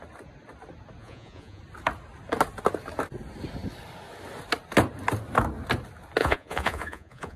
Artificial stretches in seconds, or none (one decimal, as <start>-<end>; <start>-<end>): 1.0-1.6; 6.2-7.4